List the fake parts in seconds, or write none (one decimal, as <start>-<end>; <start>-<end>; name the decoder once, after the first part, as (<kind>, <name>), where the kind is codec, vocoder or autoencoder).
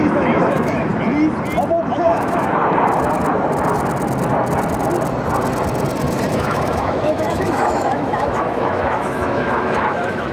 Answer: 0.0-0.9 (autoencoder, DAC-VAE); 2.0-2.6; 6.3-10.3